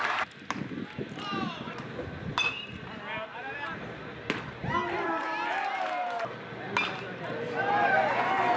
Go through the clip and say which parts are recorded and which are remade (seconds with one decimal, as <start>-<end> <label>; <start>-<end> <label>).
0.0-8.6 recorded